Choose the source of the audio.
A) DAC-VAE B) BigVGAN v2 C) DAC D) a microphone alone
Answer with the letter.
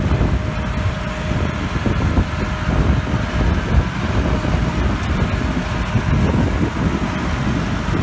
D